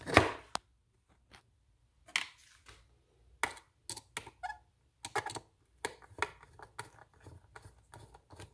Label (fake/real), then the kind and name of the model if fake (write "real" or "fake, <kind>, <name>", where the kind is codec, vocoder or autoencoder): real